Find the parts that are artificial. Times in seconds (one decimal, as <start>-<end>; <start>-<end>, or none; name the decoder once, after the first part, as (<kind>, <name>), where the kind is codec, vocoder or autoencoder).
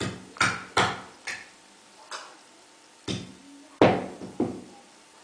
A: none